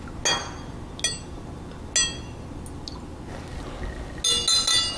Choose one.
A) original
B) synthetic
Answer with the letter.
A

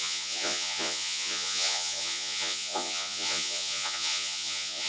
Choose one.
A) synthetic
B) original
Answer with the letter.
A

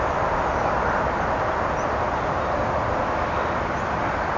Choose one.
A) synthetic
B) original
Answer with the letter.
B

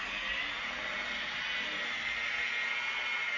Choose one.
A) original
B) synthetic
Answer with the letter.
A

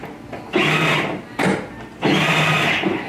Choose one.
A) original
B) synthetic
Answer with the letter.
A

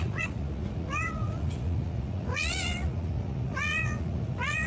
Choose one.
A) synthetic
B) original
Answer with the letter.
A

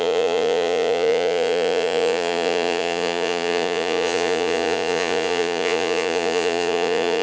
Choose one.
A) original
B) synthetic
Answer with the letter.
B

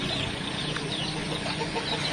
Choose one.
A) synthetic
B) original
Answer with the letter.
A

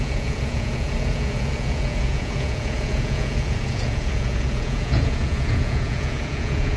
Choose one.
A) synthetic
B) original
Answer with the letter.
A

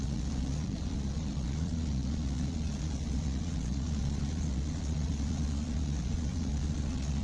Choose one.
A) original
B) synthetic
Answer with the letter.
B